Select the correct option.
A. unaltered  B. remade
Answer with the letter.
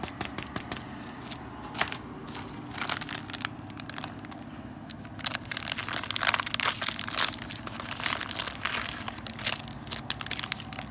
A